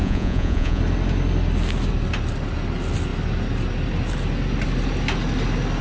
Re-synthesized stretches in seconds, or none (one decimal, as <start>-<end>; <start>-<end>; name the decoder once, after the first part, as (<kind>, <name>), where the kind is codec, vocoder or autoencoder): 0.0-0.8 (vocoder, Vocos)